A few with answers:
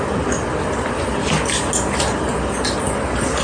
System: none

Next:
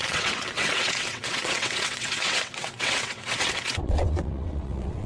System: vocoder, WaveNeXt